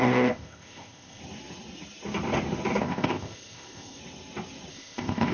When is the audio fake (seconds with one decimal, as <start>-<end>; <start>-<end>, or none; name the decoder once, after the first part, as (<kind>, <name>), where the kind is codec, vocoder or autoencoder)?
0.0-1.2 (codec, ZipCodec); 2.8-4.0; 4.7-5.3